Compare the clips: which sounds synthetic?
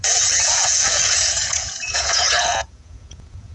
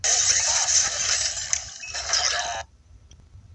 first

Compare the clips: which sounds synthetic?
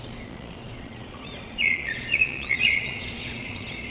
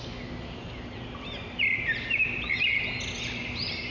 first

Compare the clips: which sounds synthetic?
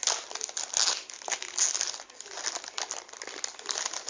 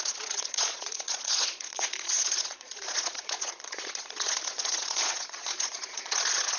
second